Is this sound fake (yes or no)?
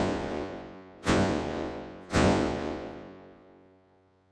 yes